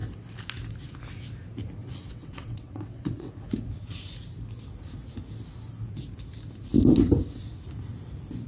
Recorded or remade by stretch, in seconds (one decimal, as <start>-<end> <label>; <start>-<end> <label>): 0.0-1.8 recorded; 1.8-3.3 remade; 3.3-8.5 recorded